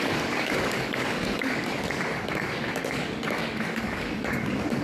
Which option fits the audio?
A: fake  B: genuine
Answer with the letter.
A